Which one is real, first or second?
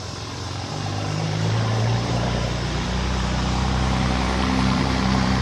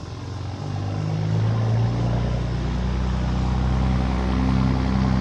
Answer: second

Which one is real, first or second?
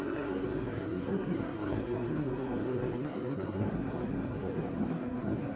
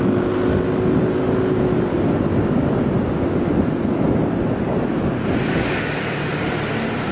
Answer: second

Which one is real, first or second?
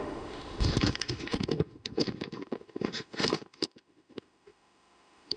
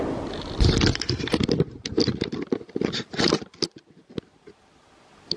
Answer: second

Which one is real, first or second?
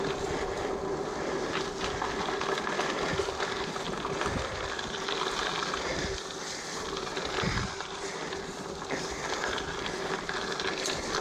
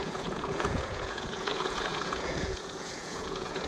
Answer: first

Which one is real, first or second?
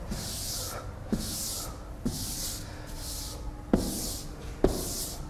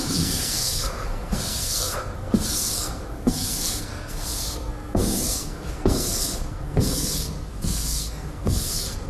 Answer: first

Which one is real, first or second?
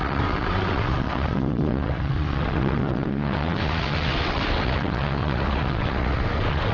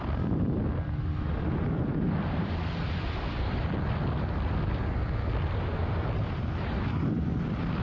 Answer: second